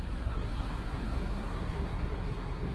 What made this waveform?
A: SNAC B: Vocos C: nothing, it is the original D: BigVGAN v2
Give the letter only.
A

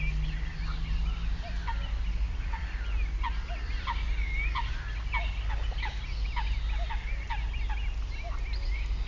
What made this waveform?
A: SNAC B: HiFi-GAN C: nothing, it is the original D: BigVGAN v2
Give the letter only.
C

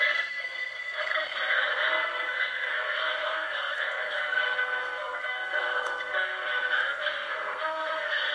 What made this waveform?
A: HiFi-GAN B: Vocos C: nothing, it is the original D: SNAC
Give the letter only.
D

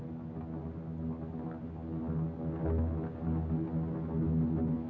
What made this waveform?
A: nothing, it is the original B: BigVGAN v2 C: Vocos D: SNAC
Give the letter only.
A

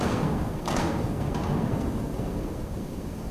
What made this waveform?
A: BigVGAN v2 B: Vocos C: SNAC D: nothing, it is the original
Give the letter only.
C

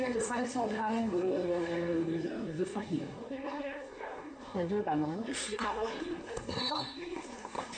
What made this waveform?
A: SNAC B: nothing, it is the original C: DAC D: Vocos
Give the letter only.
A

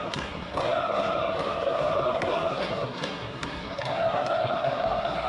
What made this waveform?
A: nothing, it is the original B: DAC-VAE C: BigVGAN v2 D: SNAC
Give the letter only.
D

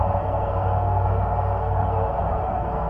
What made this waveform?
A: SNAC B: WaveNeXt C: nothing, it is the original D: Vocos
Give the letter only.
A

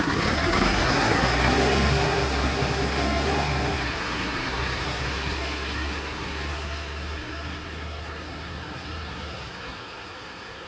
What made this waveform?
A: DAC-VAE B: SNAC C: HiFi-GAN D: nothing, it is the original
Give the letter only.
B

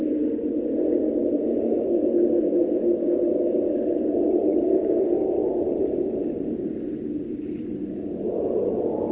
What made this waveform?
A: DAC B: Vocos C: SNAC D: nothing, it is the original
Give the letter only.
D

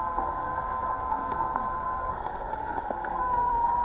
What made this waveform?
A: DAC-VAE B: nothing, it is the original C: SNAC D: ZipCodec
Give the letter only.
C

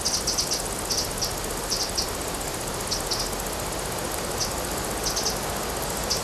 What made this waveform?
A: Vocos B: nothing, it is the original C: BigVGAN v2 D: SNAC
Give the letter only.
B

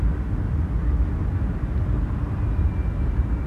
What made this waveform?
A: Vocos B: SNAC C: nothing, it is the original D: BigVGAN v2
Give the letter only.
C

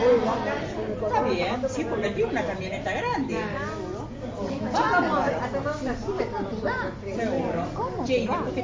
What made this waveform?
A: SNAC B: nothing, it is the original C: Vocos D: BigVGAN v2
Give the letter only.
B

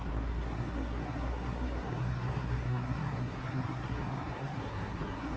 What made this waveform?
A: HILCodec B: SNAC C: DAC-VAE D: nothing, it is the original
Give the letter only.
B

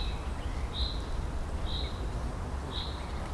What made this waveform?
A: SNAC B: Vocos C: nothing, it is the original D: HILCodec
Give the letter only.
C